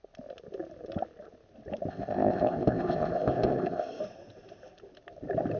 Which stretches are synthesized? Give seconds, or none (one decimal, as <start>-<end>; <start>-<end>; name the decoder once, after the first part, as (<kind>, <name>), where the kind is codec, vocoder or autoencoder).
1.9-4.0 (codec, ZipCodec)